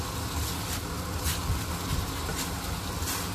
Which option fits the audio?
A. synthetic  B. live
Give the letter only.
B